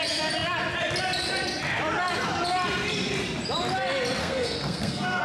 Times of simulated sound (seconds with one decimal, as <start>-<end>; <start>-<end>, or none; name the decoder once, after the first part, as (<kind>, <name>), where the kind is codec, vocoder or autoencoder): 4.2-5.2 (codec, SNAC)